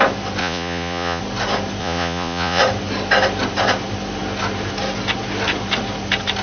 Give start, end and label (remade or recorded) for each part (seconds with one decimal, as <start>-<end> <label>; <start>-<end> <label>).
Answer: 0.0-0.4 recorded; 0.4-1.2 remade; 1.2-1.8 recorded; 1.8-2.6 remade; 2.6-6.4 recorded